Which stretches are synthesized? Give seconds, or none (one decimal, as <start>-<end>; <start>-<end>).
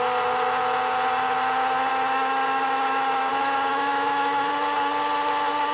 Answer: 1.9-3.3; 3.7-4.5